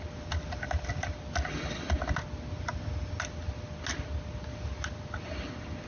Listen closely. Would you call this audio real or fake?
real